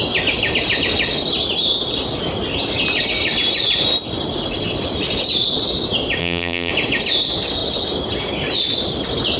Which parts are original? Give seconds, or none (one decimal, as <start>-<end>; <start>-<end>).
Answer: 0.0-6.2; 6.7-9.4